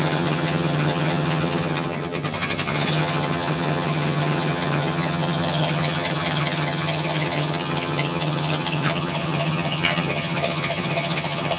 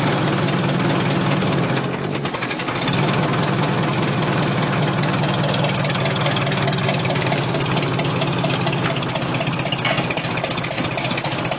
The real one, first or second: second